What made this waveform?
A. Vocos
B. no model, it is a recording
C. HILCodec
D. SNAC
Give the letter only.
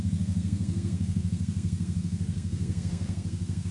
D